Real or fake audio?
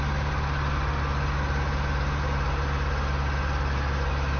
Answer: real